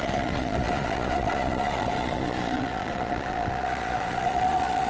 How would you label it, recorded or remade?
remade